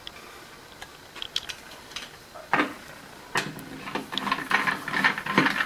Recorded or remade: recorded